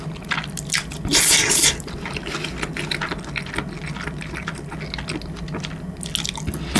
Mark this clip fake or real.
real